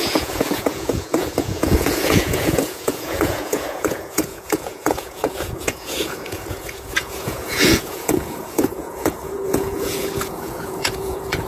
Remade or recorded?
remade